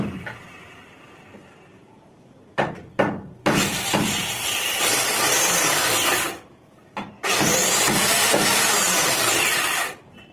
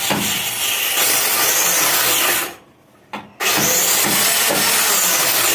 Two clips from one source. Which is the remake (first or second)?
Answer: first